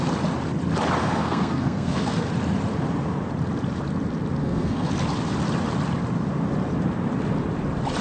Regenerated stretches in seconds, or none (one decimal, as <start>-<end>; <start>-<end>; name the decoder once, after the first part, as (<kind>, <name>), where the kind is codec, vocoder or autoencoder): 1.0-2.3 (codec, SNAC); 4.4-4.9